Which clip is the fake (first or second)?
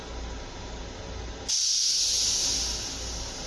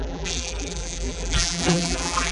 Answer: second